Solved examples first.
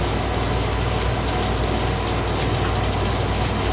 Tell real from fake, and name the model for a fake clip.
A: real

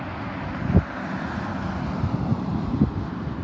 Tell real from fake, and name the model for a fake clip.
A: real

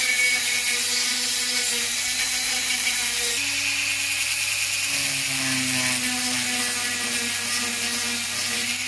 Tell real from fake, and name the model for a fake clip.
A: real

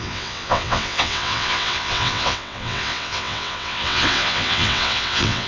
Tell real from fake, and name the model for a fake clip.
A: fake, vocoder, WaveNeXt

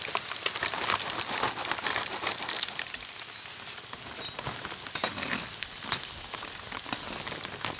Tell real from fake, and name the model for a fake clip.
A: real